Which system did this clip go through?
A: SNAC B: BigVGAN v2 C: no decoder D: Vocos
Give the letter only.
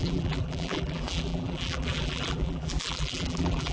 B